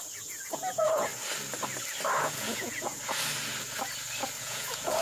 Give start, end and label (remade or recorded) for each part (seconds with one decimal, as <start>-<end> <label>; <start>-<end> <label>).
0.0-1.1 remade; 1.1-2.2 recorded; 2.2-2.9 remade; 2.9-4.4 recorded; 4.4-5.0 remade